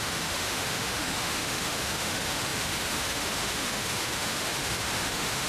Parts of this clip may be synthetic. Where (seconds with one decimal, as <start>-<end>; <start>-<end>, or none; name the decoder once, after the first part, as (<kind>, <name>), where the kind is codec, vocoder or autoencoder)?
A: 0.0-5.5 (autoencoder, DAC-VAE)